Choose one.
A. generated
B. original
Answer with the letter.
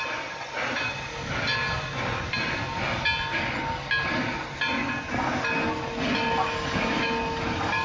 B